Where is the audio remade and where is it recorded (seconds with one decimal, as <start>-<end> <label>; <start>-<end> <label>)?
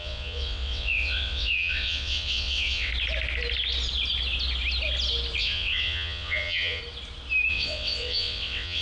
0.0-2.9 remade; 2.9-5.4 recorded; 5.4-6.8 remade; 6.8-7.5 recorded; 7.5-8.8 remade